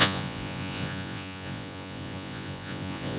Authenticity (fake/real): fake